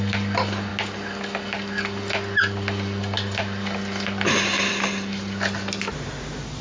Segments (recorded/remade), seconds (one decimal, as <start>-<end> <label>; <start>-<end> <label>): 0.0-6.6 recorded